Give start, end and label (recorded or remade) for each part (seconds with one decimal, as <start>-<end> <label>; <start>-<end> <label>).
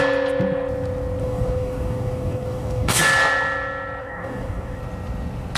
0.0-1.2 recorded; 1.2-3.0 remade; 3.0-4.0 recorded; 4.0-4.8 remade; 4.8-5.6 recorded